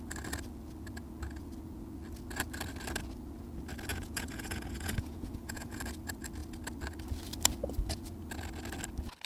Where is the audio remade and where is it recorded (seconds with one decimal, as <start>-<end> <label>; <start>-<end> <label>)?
0.0-3.9 recorded; 3.9-5.8 remade; 5.8-9.3 recorded